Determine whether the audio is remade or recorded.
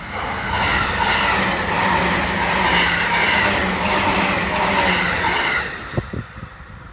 recorded